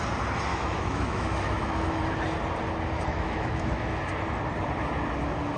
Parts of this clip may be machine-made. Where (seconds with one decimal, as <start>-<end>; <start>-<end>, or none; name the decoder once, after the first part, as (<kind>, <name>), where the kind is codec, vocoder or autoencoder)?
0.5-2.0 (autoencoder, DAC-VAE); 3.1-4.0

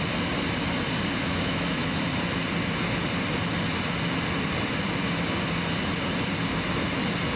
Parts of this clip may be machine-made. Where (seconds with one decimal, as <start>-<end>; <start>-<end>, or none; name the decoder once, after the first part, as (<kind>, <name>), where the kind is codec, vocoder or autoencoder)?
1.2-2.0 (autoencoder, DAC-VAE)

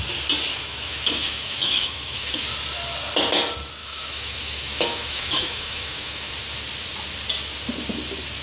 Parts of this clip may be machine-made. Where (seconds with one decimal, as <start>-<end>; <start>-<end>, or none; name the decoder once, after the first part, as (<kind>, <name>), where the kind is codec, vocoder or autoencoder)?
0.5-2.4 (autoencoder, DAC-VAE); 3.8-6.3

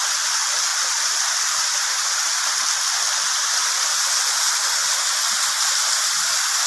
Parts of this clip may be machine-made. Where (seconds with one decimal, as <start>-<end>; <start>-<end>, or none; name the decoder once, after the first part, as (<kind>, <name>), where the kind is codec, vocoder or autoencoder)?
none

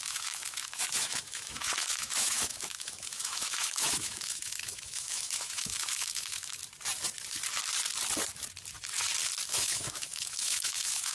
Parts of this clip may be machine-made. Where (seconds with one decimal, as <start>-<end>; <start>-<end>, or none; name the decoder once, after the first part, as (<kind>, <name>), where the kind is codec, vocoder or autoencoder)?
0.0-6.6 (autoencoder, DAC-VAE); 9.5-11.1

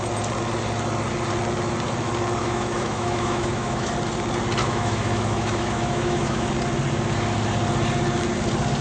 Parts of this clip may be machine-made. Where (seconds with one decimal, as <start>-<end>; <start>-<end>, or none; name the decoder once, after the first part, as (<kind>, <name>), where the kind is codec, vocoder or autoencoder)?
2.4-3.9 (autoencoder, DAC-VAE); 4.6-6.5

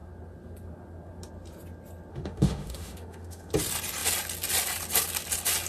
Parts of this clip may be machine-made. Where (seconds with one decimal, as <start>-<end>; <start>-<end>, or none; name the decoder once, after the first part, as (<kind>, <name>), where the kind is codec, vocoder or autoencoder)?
2.1-3.5 (autoencoder, DAC-VAE)

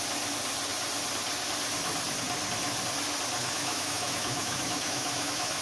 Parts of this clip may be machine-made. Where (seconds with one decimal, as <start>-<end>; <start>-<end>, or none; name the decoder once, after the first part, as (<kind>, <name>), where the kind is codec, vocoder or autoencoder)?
3.4-5.6 (autoencoder, DAC-VAE)